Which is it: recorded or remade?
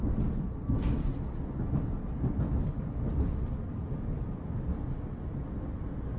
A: recorded